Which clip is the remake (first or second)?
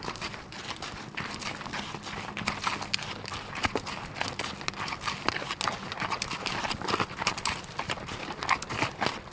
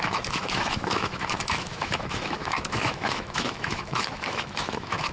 second